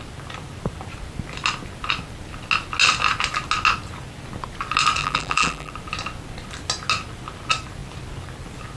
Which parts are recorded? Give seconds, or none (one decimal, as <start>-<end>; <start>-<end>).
0.0-5.0; 5.7-8.8